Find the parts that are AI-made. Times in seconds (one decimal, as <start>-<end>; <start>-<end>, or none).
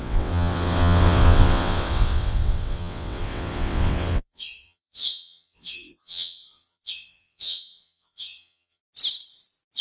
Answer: 0.0-8.8